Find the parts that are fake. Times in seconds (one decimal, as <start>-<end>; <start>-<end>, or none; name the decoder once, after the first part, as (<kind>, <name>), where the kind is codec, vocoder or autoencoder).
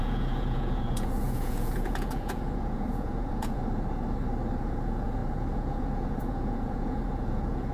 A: 0.0-3.6 (vocoder, Vocos); 4.6-7.7